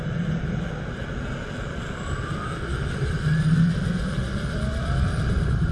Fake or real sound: real